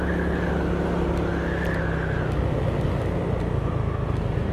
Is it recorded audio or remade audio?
recorded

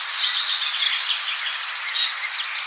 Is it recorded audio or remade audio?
recorded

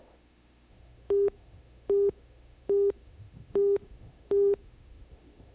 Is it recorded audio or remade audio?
remade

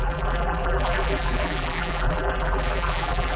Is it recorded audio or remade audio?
remade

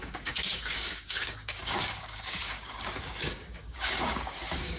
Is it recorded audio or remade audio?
remade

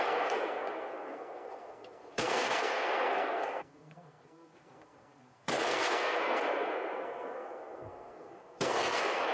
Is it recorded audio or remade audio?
remade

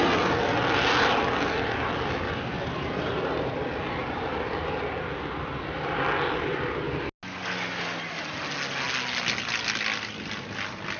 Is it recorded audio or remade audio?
recorded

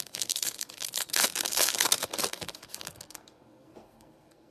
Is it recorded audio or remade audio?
remade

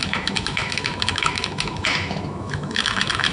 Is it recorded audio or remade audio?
remade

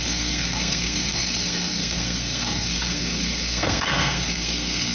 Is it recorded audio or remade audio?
remade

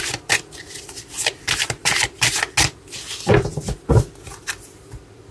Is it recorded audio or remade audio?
recorded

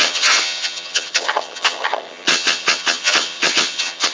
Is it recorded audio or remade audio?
remade